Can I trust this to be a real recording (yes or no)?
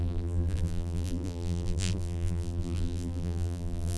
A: no